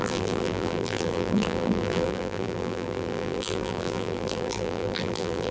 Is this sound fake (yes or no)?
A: yes